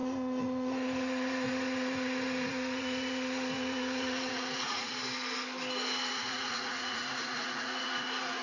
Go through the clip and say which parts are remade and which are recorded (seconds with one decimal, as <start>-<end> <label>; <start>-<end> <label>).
0.0-4.9 remade; 4.9-6.1 recorded; 6.1-8.4 remade